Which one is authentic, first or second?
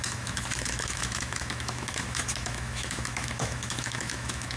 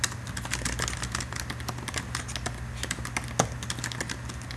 second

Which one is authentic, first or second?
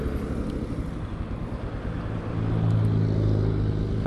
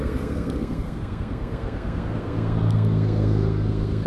first